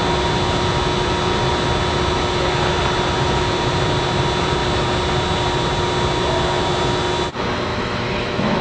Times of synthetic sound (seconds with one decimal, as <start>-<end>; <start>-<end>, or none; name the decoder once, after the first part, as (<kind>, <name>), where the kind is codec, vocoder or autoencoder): 7.7-8.6 (autoencoder, DAC-VAE)